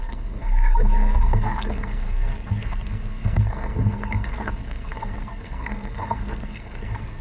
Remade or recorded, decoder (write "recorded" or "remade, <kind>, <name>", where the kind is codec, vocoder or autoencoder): remade, codec, SNAC